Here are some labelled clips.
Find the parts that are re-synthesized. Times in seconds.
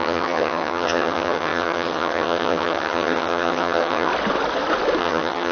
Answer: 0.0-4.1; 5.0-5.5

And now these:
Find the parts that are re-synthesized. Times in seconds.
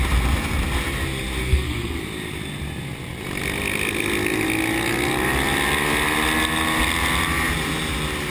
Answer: 1.5-2.0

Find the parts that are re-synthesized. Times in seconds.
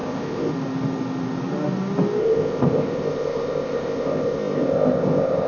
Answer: 0.0-0.5; 2.2-5.5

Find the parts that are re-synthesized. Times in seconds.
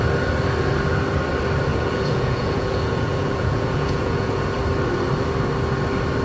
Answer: 1.7-4.4